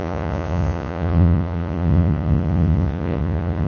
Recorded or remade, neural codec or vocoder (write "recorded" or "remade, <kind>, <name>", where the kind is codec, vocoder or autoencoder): remade, vocoder, Vocos